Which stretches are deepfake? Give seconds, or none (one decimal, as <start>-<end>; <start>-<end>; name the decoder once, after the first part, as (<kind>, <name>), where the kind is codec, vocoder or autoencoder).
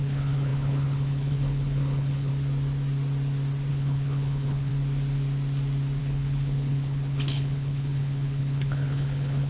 0.0-2.3 (codec, HILCodec); 3.7-4.7; 6.0-9.5